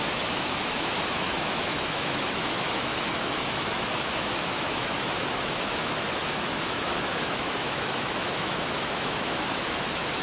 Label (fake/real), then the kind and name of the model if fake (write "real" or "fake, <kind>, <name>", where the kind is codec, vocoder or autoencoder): fake, autoencoder, DAC-VAE